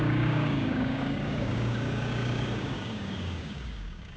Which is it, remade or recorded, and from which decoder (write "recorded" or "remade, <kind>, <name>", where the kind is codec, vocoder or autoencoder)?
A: remade, codec, DAC